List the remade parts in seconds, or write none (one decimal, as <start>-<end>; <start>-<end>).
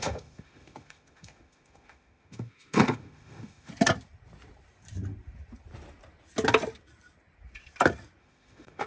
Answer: 0.0-3.7; 8.2-8.9